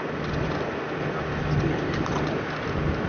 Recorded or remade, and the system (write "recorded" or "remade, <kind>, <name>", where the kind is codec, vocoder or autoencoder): recorded